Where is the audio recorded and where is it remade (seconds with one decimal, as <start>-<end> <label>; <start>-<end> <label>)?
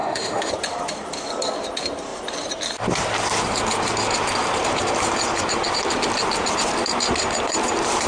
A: 0.0-0.5 remade; 0.5-8.1 recorded